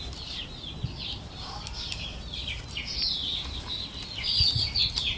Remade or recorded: recorded